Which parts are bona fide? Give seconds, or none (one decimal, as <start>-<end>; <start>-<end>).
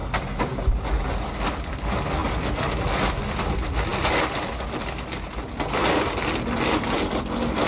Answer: 0.0-7.7